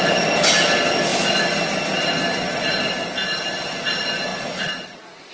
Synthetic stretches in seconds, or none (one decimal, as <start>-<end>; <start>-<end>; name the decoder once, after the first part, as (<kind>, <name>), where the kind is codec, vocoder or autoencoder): 4.3-5.3 (vocoder, Vocos)